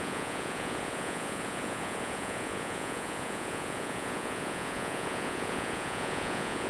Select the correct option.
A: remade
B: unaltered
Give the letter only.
A